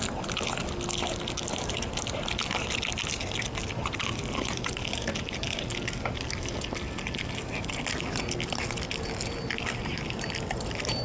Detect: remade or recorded recorded